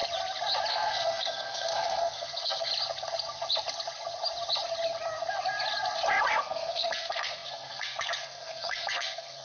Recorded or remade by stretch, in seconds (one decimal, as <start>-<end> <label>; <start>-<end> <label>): 0.0-0.7 recorded; 0.7-2.7 remade; 2.7-6.4 recorded; 6.4-9.4 remade